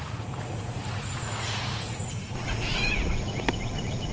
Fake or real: fake